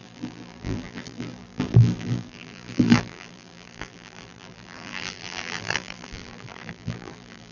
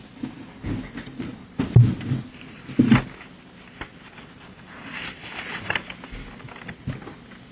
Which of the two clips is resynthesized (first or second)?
first